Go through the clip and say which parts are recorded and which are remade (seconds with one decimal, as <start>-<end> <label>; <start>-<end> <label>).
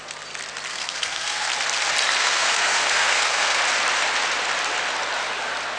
0.0-0.7 recorded; 0.7-1.5 remade; 1.5-2.2 recorded; 2.2-3.6 remade; 3.6-5.8 recorded